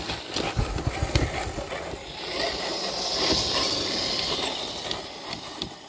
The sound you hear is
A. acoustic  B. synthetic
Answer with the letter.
A